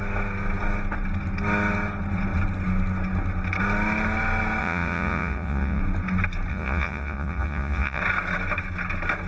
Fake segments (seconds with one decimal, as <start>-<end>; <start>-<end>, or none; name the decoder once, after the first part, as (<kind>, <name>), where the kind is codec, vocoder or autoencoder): 4.6-5.8 (vocoder, Vocos); 6.5-8.0